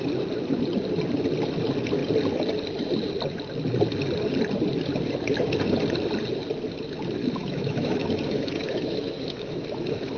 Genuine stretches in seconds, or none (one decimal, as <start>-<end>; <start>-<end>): 0.0-7.2